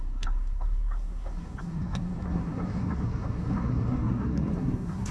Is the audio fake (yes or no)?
yes